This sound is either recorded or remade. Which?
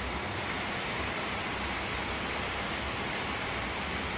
recorded